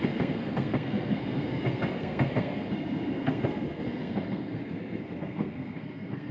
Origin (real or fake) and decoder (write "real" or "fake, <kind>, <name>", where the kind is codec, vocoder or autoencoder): fake, codec, SNAC